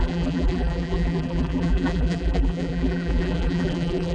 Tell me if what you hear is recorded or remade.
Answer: remade